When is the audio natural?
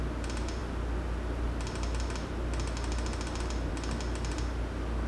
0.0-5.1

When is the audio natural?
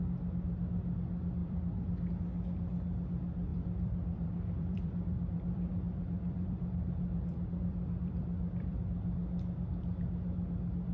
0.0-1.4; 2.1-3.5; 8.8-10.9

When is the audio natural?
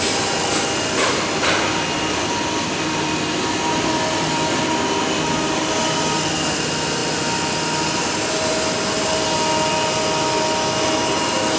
0.0-11.6